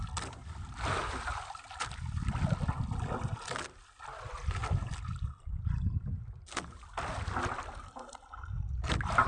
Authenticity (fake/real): real